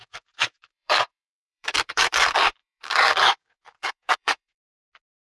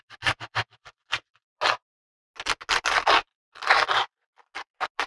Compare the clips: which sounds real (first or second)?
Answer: second